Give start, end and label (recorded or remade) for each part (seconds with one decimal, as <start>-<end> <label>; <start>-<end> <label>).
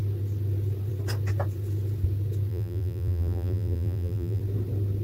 0.0-2.5 recorded; 2.5-4.4 remade; 4.4-5.0 recorded